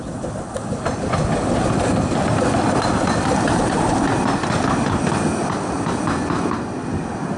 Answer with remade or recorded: recorded